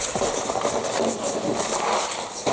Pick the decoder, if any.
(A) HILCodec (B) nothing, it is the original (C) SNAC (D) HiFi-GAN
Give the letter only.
B